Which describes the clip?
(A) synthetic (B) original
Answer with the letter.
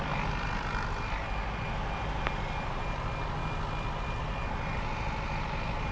B